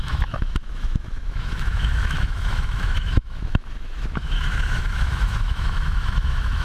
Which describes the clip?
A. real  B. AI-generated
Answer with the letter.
B